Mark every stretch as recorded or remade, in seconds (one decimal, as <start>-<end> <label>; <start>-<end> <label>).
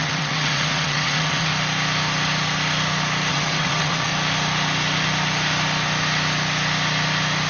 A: 0.0-1.5 remade; 1.5-3.3 recorded; 3.3-4.1 remade; 4.1-7.5 recorded